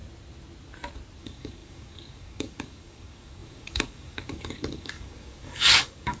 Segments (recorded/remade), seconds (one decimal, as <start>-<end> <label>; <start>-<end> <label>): 0.0-1.2 recorded; 1.2-6.2 remade